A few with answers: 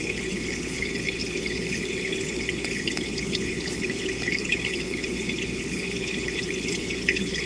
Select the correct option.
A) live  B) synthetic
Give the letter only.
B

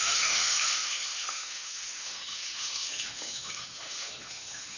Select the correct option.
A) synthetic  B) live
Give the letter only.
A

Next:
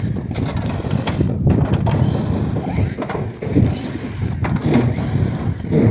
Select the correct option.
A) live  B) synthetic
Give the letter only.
A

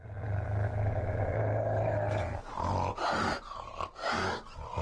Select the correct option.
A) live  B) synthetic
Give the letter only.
A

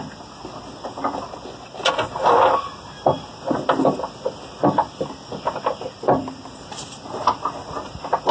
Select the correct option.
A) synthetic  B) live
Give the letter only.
B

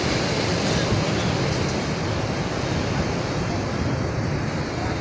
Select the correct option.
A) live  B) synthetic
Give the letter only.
A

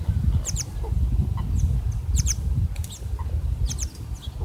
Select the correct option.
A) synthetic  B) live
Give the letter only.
B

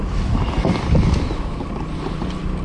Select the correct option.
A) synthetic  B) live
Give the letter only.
B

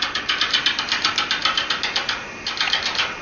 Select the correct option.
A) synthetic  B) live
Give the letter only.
A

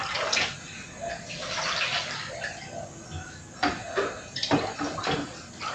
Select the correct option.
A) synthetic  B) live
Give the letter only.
B